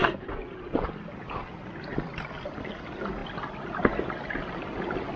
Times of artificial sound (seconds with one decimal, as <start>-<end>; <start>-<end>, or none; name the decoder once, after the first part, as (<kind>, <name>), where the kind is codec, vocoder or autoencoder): none